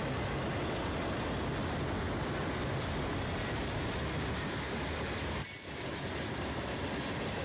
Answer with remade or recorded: recorded